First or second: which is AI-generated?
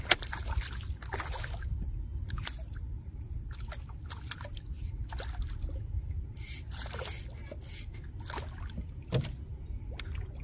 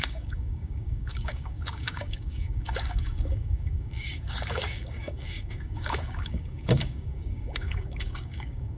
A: second